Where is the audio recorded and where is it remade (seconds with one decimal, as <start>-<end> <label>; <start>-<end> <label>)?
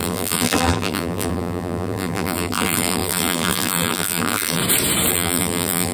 0.0-4.6 remade; 4.6-5.1 recorded; 5.1-5.9 remade